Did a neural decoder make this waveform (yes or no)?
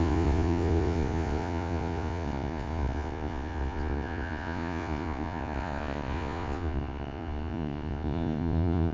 yes